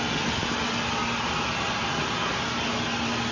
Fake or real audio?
real